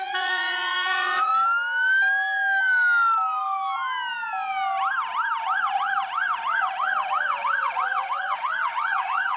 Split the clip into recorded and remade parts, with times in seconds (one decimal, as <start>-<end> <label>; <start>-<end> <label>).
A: 0.0-1.3 remade; 1.3-5.4 recorded; 5.4-9.4 remade